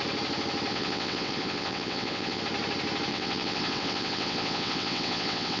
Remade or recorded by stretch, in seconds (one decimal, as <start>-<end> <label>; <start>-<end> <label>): 0.0-0.7 recorded; 0.7-2.4 remade; 2.4-3.1 recorded; 3.1-5.6 remade